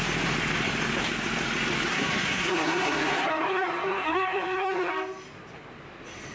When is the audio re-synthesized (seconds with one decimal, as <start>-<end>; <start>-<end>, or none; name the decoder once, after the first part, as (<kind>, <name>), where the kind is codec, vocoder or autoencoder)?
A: 1.9-4.9 (codec, SNAC)